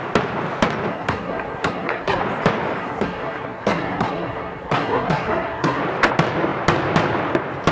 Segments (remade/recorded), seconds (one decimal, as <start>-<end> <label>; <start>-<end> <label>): 0.0-0.9 recorded; 0.9-2.2 remade; 2.2-2.8 recorded; 2.8-5.8 remade; 5.8-7.7 recorded